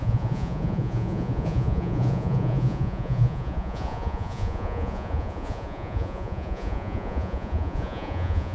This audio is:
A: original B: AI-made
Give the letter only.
B